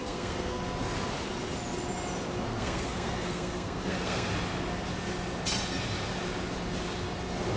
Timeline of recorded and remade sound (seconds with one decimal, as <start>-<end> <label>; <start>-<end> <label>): 0.0-0.6 remade; 0.6-2.5 recorded; 2.5-4.3 remade; 4.3-7.6 recorded